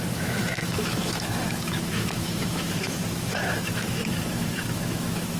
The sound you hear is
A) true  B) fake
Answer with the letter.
B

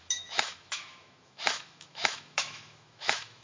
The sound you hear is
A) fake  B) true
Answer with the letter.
A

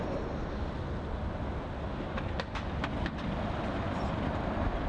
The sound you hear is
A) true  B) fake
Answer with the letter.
A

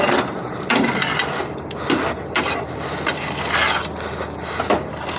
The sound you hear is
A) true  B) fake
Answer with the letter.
A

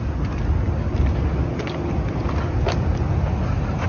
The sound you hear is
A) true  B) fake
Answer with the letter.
A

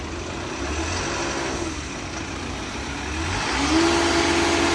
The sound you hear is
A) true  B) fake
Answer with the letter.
A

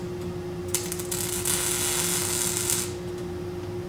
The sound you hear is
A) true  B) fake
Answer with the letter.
A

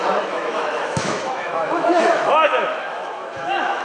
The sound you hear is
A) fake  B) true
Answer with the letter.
A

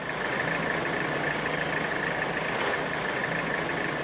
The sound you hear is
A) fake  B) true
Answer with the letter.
B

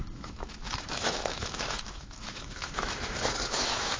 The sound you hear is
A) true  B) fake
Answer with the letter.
B